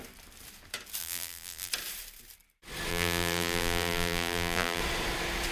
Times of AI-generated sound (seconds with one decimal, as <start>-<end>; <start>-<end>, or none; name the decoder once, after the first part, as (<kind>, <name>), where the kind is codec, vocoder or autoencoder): 1.0-1.7 (vocoder, BigVGAN v2); 2.9-4.8

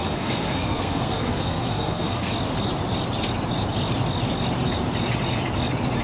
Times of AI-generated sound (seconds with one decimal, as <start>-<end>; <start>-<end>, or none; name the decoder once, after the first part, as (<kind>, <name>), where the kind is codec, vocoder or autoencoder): 0.0-2.3 (codec, SNAC)